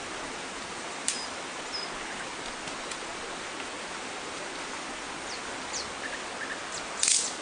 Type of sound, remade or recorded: recorded